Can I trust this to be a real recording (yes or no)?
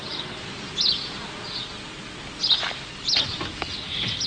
yes